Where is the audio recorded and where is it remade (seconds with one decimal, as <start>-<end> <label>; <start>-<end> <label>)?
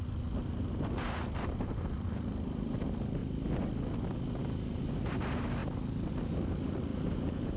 0.0-6.9 recorded; 6.9-7.6 remade